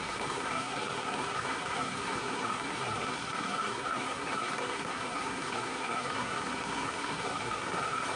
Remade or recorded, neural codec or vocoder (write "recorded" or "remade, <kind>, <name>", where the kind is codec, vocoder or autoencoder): remade, codec, SNAC